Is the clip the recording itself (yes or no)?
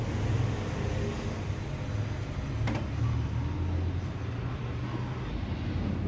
yes